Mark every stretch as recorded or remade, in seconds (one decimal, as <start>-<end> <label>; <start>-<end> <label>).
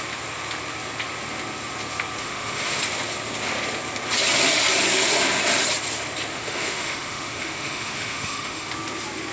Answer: 0.0-2.2 recorded; 2.2-2.8 remade; 2.8-6.3 recorded; 6.3-8.7 remade; 8.7-9.3 recorded